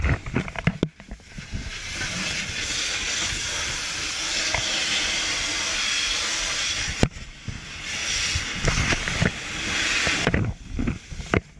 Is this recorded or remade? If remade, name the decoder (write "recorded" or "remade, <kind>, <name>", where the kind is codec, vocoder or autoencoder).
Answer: recorded